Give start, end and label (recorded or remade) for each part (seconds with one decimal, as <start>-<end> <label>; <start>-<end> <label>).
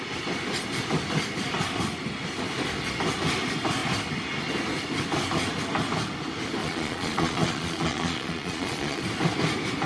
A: 0.0-6.6 recorded; 6.6-9.0 remade; 9.0-9.9 recorded